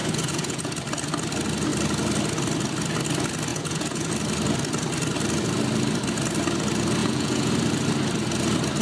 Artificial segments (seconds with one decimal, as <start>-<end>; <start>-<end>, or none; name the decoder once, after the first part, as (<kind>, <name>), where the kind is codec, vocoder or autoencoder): 0.0-0.7 (vocoder, Vocos); 3.5-4.1; 7.0-7.5